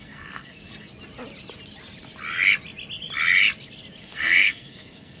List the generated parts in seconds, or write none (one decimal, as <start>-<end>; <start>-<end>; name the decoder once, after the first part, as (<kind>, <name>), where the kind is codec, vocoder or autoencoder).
0.0-0.9 (codec, SNAC); 4.0-5.2